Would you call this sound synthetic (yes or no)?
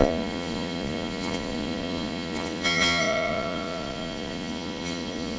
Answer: yes